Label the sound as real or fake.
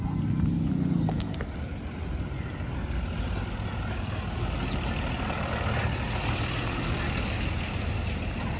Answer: real